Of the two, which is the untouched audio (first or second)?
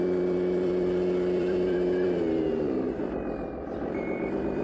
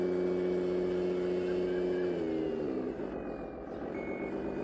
second